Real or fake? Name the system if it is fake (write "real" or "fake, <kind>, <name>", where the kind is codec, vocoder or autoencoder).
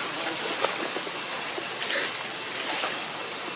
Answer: real